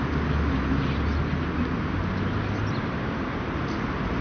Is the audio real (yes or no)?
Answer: yes